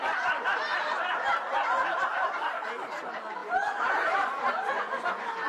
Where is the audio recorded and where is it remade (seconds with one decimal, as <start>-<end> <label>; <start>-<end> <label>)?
0.0-3.4 recorded; 3.4-5.1 remade; 5.1-5.5 recorded